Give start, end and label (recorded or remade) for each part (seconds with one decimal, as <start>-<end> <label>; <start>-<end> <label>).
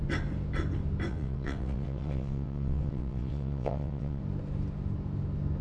0.0-1.1 recorded; 1.1-4.2 remade; 4.2-5.6 recorded